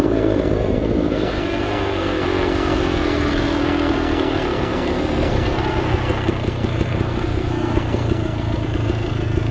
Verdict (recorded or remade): remade